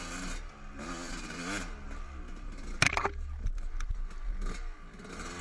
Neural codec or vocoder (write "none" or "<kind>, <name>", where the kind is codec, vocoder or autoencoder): none